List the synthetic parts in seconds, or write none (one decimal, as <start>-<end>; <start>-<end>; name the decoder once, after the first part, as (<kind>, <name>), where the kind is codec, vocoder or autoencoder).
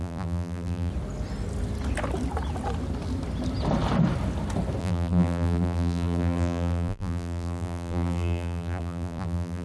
0.0-0.9 (vocoder, BigVGAN v2); 4.8-9.6